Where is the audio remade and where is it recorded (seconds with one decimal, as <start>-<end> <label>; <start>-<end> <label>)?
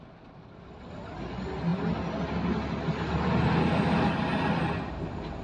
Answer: 0.0-5.4 recorded